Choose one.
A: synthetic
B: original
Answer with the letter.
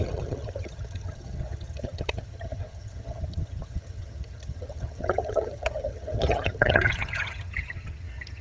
A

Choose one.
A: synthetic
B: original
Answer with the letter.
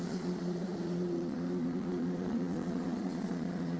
A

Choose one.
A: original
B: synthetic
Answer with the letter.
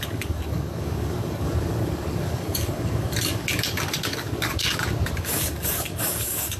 B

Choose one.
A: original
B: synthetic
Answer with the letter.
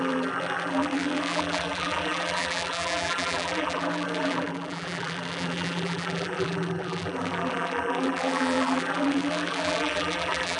B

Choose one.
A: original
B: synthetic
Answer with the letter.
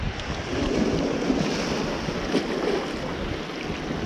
A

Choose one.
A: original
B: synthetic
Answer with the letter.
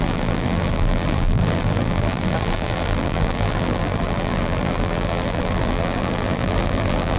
B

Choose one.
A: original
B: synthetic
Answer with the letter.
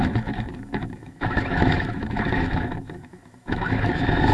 B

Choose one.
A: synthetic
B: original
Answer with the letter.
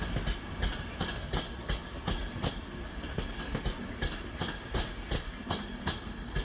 B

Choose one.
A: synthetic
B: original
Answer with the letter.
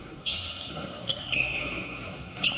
A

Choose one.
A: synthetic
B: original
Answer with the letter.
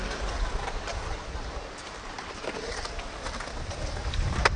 B